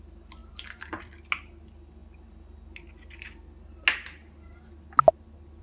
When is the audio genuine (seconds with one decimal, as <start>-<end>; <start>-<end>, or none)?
0.0-0.4; 1.1-5.6